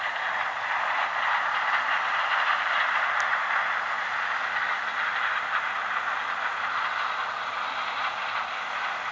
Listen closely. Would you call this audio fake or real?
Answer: real